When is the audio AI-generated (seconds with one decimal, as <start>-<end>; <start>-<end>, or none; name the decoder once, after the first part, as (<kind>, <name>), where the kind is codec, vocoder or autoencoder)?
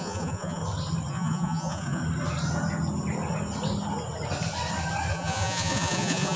0.0-0.6 (vocoder, Vocos); 1.1-2.0; 5.1-6.4